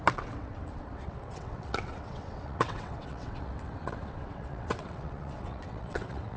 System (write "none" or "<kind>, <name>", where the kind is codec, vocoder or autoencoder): vocoder, WaveNeXt